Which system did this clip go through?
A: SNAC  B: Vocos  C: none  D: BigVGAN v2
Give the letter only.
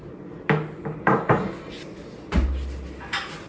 C